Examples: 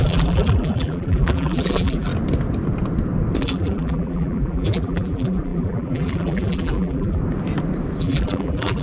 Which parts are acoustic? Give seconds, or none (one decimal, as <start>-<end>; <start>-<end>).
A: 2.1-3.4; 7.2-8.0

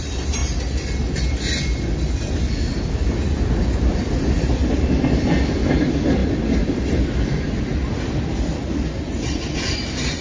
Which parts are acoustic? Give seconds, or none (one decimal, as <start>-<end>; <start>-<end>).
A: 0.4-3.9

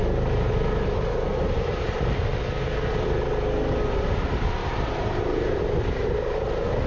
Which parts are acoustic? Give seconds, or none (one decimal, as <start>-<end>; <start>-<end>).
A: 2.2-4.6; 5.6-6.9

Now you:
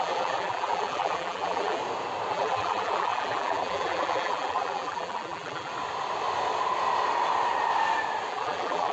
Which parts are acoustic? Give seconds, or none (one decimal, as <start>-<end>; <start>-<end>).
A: 1.8-2.3; 5.7-8.3

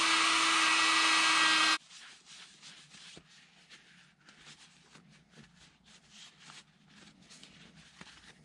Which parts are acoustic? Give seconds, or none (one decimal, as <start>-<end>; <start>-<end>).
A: 0.0-8.4

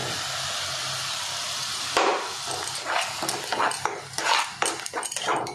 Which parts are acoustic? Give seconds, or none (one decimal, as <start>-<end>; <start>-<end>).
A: 0.0-0.8; 2.1-5.5

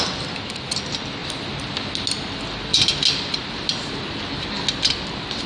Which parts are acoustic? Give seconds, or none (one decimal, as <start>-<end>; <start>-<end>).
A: 0.0-5.5